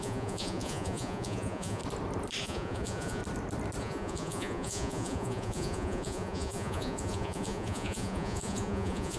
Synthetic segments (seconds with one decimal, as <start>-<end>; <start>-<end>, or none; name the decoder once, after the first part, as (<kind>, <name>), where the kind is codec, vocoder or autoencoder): 0.0-1.8 (vocoder, Vocos); 2.4-3.2; 3.8-9.2